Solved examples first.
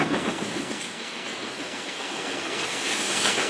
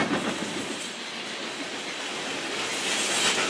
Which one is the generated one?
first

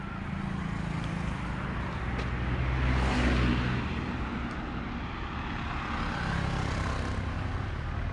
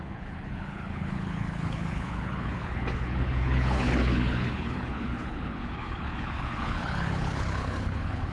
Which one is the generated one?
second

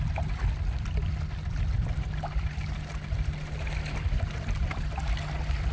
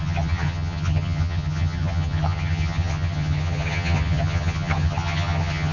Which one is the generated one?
second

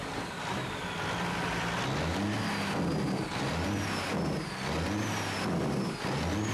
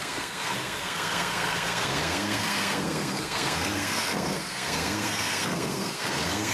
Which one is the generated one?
second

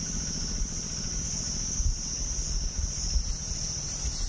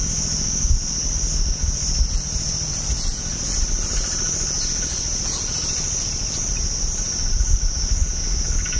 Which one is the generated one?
first